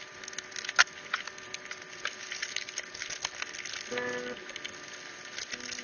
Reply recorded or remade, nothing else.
recorded